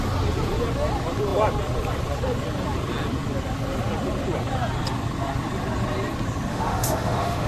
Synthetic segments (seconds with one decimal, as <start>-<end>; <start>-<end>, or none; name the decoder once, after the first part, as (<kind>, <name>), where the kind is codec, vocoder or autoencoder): 6.5-7.5 (autoencoder, DAC-VAE)